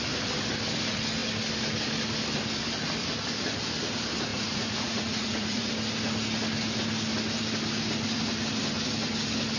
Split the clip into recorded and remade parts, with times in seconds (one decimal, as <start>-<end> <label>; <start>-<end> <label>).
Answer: 0.0-4.3 recorded; 4.3-5.7 remade; 5.7-9.6 recorded

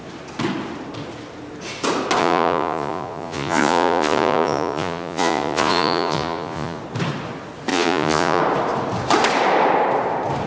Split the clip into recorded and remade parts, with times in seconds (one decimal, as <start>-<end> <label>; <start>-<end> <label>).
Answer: 0.0-2.2 recorded; 2.2-6.8 remade; 6.8-7.7 recorded; 7.7-8.4 remade; 8.4-10.5 recorded

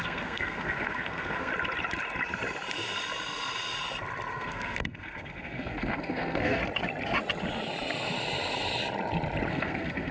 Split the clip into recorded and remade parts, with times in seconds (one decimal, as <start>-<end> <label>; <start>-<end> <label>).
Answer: 0.0-1.5 remade; 1.5-4.3 recorded; 4.3-6.6 remade; 6.6-9.5 recorded; 9.5-10.1 remade

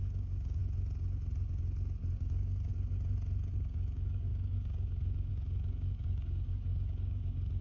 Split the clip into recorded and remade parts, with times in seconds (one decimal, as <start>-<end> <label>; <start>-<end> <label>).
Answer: 0.0-0.6 remade; 0.6-2.2 recorded; 2.2-2.7 remade; 2.7-3.5 recorded; 3.5-7.6 remade

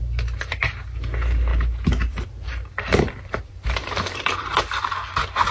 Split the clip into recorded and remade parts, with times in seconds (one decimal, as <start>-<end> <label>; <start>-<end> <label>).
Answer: 0.0-0.6 remade; 0.6-1.5 recorded; 1.5-4.8 remade; 4.8-5.5 recorded